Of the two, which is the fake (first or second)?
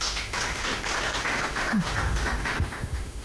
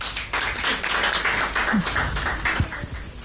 first